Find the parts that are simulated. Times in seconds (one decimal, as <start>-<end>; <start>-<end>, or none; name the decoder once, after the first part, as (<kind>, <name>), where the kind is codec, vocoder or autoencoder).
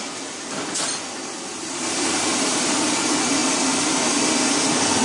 1.5-2.9 (vocoder, BigVGAN v2)